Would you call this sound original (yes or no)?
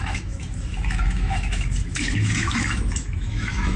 no